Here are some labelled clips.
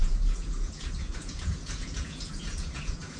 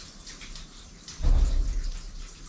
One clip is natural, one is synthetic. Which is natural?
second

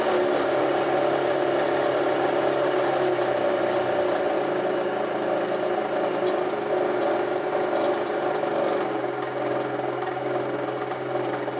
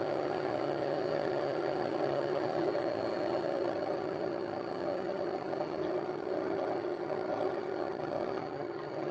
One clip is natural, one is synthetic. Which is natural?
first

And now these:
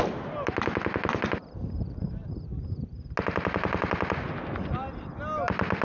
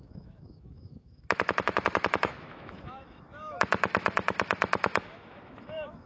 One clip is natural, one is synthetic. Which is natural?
first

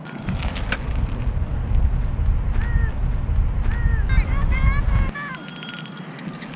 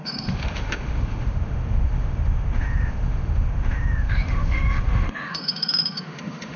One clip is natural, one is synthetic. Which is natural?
first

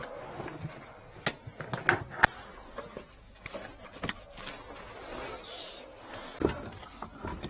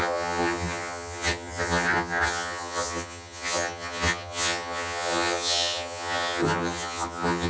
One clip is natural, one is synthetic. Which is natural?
first